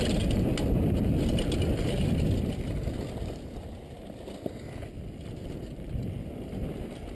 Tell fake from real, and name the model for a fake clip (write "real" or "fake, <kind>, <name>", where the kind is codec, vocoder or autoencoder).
real